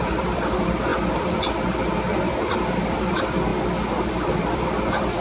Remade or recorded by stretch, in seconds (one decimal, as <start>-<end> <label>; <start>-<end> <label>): 0.0-0.9 remade; 0.9-2.9 recorded; 2.9-3.5 remade; 3.5-4.1 recorded; 4.1-5.2 remade